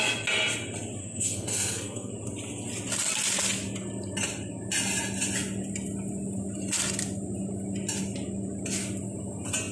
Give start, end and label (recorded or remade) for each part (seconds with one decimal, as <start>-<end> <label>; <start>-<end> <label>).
0.0-1.0 recorded; 1.0-2.1 remade; 2.1-9.7 recorded